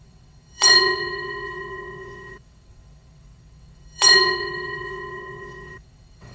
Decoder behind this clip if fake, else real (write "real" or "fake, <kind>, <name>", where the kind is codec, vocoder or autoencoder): fake, vocoder, WaveNeXt